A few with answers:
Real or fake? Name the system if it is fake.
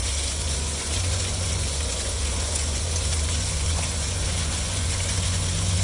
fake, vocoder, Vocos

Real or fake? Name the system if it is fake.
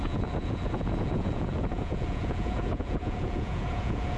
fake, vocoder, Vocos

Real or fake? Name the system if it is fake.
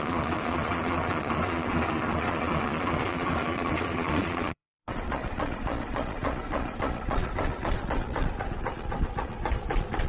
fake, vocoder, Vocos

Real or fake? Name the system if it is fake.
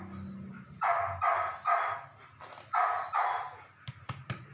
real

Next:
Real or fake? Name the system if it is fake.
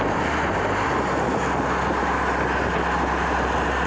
real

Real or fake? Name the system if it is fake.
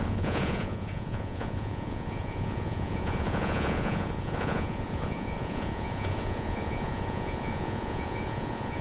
fake, vocoder, Vocos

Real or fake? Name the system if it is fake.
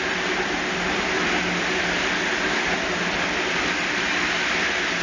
real